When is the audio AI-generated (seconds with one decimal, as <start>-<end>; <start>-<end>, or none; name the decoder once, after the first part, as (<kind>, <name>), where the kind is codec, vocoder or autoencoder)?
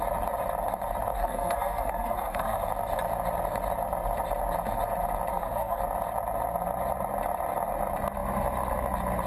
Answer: 1.1-2.7 (codec, SNAC); 5.3-5.8